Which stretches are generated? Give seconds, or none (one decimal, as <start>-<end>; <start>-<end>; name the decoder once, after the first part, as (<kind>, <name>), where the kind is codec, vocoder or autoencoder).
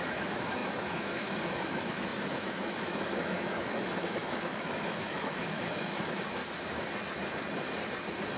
0.0-6.4 (autoencoder, DAC-VAE)